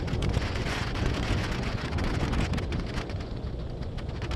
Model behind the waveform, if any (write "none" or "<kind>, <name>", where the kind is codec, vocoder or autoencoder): vocoder, Vocos